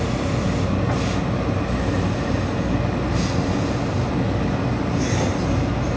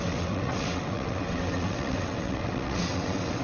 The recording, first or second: first